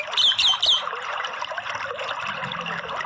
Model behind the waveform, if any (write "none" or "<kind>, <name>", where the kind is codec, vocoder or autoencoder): none